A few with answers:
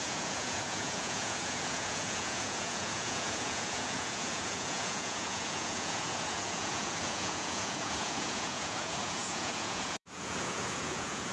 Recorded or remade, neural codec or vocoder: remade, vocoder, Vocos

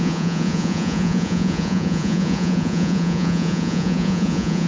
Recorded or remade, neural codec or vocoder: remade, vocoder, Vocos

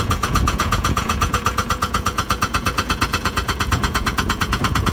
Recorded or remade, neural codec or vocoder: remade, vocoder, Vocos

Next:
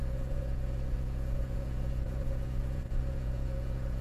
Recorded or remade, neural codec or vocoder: remade, vocoder, Vocos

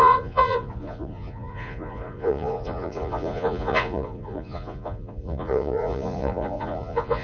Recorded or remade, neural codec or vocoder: remade, vocoder, Vocos